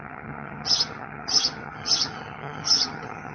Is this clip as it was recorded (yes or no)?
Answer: no